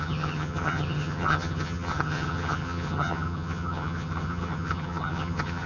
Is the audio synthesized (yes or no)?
yes